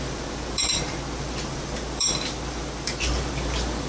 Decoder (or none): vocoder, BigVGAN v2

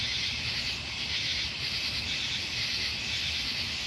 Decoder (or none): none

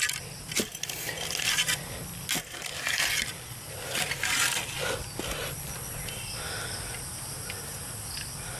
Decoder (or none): none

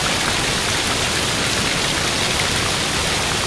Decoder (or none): none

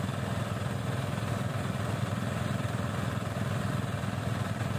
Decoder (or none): none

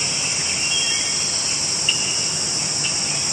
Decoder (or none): none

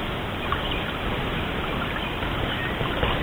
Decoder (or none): none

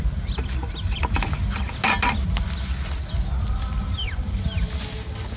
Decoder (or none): none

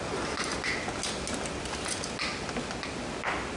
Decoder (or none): none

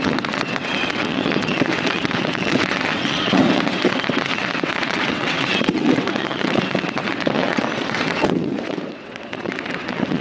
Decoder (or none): vocoder, WaveNeXt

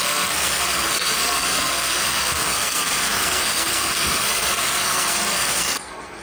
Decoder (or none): codec, SNAC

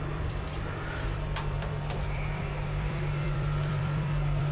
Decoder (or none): vocoder, BigVGAN v2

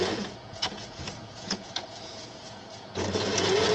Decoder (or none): vocoder, Vocos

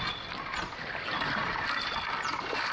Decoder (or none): none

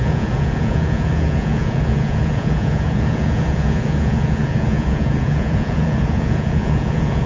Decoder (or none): vocoder, Vocos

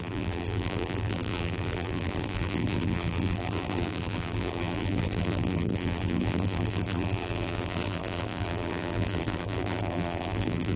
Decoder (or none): vocoder, BigVGAN v2